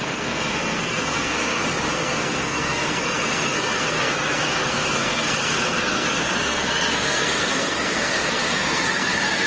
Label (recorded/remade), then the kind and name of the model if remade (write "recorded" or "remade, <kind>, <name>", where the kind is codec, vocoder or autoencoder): remade, codec, SNAC